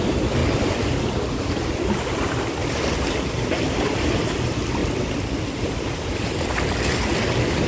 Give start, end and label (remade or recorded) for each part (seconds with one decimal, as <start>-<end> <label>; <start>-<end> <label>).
0.0-7.7 recorded